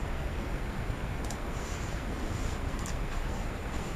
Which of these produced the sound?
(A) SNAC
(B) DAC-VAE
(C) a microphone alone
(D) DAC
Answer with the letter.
A